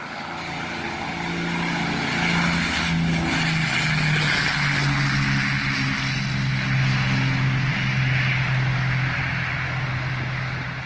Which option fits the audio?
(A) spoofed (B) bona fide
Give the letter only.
B